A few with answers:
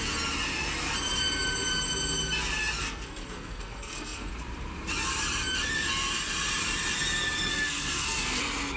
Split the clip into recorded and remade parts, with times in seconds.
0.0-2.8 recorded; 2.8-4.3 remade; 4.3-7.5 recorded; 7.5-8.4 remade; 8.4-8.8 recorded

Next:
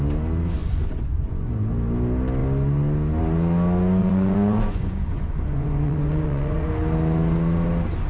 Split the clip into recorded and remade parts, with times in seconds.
0.0-0.6 recorded; 0.6-1.5 remade; 1.5-4.0 recorded; 4.0-6.7 remade; 6.7-8.1 recorded

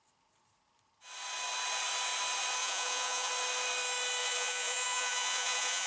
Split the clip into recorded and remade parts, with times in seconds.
0.0-2.6 recorded; 2.6-3.3 remade; 3.3-4.2 recorded; 4.2-5.9 remade

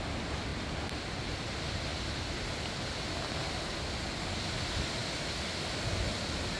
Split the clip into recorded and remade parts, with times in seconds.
0.0-6.6 recorded